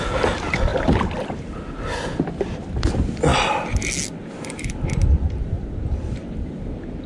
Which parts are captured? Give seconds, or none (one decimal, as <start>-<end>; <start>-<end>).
0.0-7.1